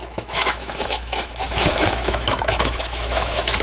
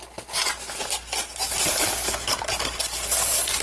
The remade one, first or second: first